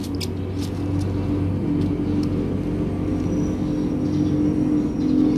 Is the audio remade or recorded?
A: recorded